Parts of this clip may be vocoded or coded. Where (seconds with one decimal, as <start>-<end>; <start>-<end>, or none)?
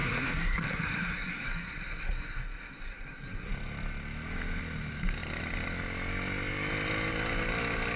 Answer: 0.0-3.5